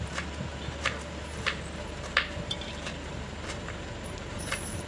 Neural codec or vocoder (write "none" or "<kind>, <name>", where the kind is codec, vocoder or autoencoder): vocoder, BigVGAN v2